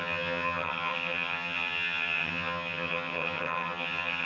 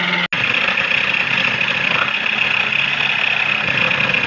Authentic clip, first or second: second